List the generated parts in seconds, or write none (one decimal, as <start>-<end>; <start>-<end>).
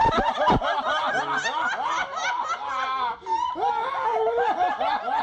none